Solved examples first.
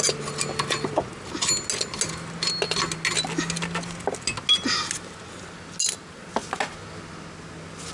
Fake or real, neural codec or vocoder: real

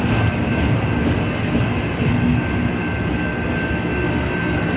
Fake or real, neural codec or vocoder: real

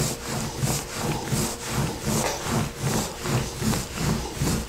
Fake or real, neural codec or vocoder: real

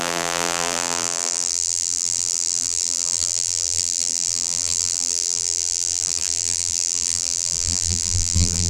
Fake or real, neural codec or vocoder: fake, vocoder, BigVGAN v2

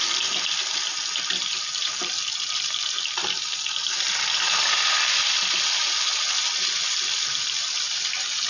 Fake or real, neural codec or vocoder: real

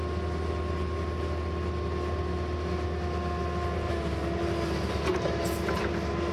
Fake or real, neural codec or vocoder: real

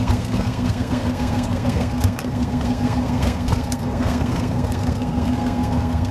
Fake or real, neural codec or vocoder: fake, codec, SNAC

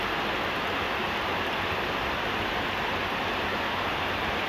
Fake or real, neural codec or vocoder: real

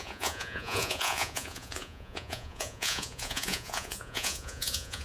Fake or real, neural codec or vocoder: fake, vocoder, Vocos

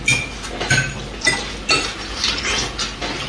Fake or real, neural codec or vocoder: real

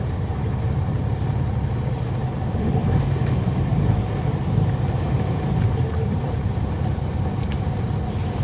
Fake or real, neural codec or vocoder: fake, vocoder, BigVGAN v2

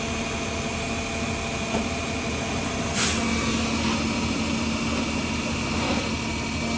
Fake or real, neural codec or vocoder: real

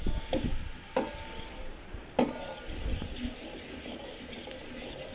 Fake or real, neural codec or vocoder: real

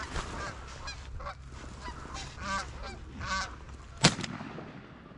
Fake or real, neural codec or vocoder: real